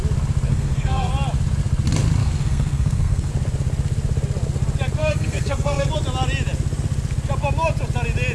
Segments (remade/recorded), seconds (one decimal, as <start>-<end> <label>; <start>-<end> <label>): 0.0-0.5 recorded; 0.5-1.1 remade; 1.1-2.2 recorded; 2.2-3.3 remade; 3.3-5.0 recorded; 5.0-5.9 remade; 5.9-8.3 recorded